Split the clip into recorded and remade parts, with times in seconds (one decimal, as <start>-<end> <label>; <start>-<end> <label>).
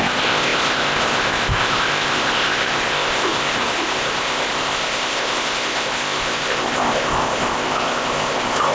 0.0-8.7 remade